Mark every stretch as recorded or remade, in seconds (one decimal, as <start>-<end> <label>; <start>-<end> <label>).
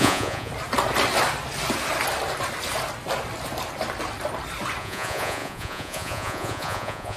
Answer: 0.0-0.5 remade; 0.5-4.8 recorded; 4.8-7.2 remade